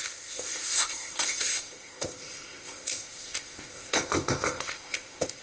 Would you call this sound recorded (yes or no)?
no